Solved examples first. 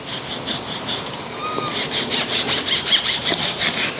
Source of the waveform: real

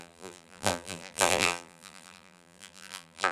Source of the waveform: fake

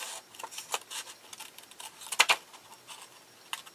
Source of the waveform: real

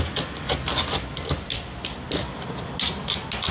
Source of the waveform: real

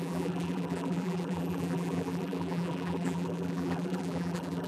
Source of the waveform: fake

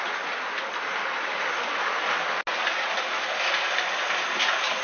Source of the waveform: real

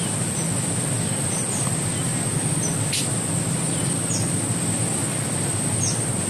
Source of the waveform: real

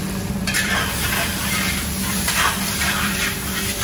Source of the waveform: fake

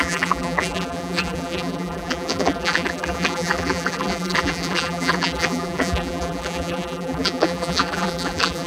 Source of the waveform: fake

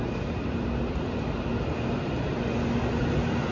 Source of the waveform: real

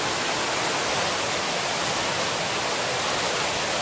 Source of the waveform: real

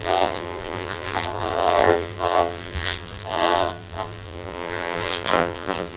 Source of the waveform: fake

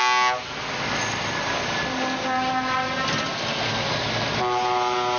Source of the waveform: real